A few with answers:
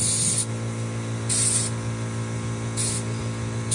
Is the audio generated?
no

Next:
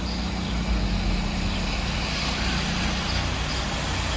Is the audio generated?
no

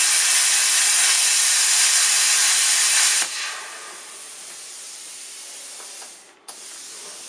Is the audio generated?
no